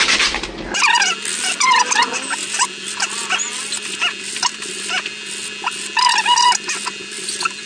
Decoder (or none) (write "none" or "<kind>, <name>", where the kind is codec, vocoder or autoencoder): none